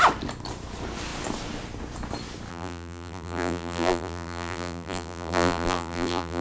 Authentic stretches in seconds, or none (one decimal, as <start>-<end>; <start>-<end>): 0.0-2.5